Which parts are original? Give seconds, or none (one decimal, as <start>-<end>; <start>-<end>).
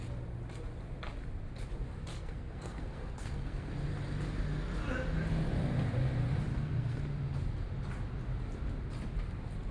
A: 0.0-2.1; 3.7-6.5; 7.0-9.7